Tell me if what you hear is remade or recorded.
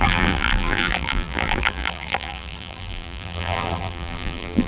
remade